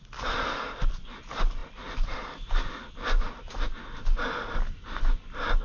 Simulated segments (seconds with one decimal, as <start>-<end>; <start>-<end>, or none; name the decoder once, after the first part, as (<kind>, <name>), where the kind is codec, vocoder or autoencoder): none